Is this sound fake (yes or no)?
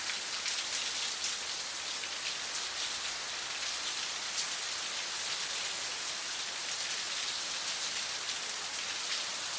no